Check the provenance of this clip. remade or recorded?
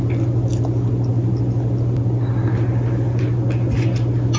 recorded